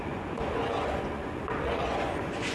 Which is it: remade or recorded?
remade